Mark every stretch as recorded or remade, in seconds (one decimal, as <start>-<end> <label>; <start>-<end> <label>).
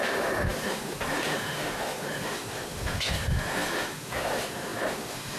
0.0-5.4 remade